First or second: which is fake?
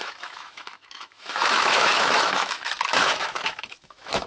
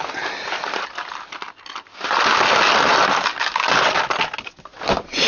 first